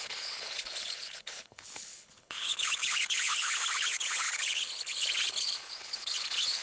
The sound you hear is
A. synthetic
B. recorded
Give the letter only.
A